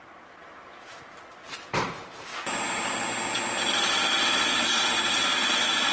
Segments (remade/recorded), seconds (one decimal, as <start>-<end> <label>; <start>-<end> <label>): 0.0-2.3 remade; 2.3-5.9 recorded